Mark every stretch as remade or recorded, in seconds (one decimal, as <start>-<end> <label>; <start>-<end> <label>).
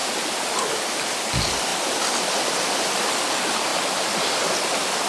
0.0-1.2 remade; 1.2-5.1 recorded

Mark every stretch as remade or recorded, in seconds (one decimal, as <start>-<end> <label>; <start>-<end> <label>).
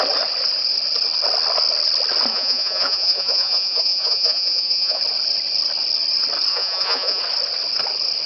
0.0-2.3 recorded; 2.3-5.0 remade; 5.0-6.5 recorded; 6.5-7.2 remade; 7.2-8.3 recorded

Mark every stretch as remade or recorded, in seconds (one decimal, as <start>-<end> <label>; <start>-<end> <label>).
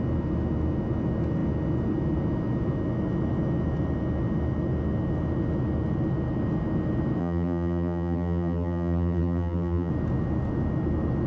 0.0-7.2 recorded; 7.2-9.9 remade; 9.9-11.3 recorded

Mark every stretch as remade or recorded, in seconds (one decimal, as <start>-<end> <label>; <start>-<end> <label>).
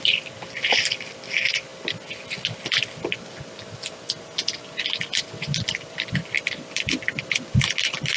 0.0-1.7 remade; 1.7-5.2 recorded; 5.2-8.2 remade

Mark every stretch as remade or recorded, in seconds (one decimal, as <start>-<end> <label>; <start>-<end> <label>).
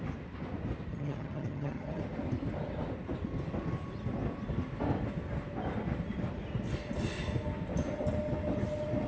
0.0-0.9 recorded; 0.9-2.0 remade; 2.0-9.1 recorded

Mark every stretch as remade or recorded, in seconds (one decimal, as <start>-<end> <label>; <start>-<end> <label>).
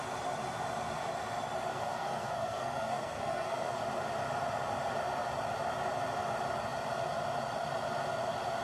0.0-1.7 recorded; 1.7-3.8 remade; 3.8-8.6 recorded